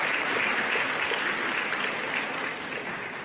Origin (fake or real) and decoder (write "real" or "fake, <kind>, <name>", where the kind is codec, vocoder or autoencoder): real